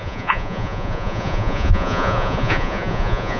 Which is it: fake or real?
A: fake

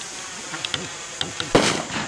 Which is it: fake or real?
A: real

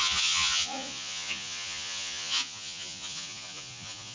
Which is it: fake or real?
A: fake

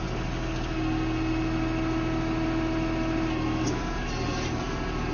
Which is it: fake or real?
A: real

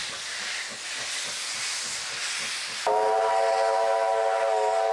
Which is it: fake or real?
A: real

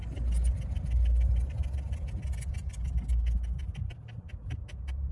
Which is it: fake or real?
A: real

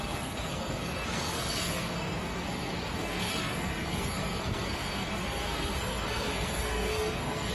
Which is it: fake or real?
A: fake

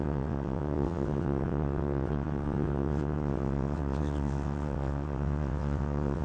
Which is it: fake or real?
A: fake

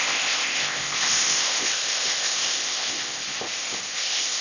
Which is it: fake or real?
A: fake